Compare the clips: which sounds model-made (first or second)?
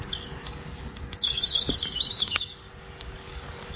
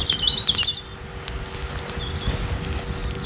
first